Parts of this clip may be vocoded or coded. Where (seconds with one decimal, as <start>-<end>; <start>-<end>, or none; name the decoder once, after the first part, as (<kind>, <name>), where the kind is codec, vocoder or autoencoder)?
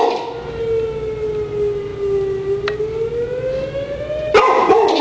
none